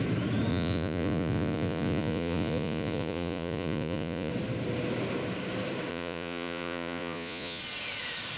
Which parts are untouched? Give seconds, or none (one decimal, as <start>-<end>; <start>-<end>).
0.0-0.5; 4.3-5.9; 7.6-8.4